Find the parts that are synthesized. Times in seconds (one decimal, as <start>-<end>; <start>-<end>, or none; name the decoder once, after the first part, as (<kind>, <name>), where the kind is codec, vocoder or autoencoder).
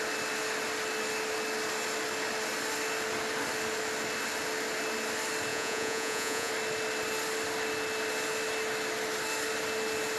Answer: 5.5-6.5 (vocoder, Vocos)